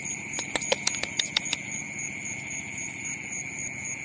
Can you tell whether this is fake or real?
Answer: fake